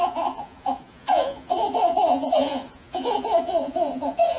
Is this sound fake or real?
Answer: fake